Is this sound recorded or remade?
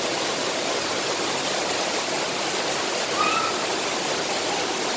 recorded